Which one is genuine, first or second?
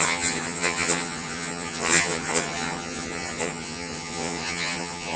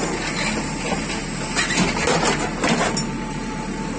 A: second